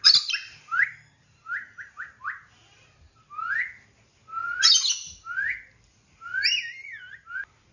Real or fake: real